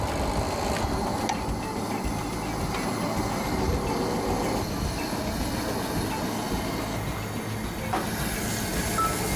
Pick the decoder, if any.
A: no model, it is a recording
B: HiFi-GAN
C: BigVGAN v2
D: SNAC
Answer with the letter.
A